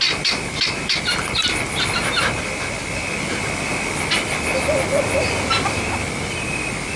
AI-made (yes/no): no